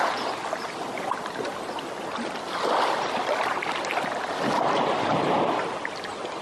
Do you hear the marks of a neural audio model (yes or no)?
no